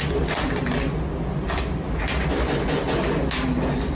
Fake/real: real